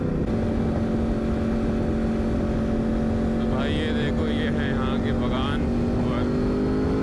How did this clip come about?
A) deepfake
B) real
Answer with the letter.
B